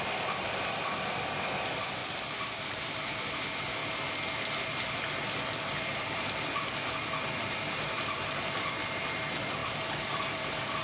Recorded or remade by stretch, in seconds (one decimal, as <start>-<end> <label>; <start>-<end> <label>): 0.0-3.8 remade; 3.8-5.3 recorded; 5.3-10.8 remade